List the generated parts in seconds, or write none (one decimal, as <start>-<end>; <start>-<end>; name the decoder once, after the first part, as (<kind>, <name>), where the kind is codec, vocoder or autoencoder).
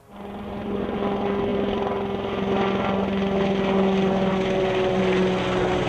none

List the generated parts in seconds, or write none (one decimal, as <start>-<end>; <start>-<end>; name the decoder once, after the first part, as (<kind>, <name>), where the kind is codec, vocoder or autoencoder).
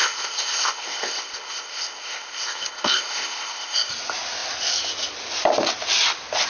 0.0-3.9 (codec, ZipCodec)